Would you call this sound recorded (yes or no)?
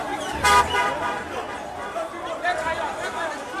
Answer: no